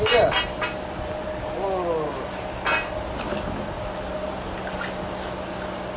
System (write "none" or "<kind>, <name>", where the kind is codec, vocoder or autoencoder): none